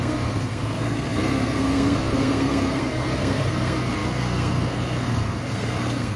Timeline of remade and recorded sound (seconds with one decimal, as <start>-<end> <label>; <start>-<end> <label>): 0.0-6.2 remade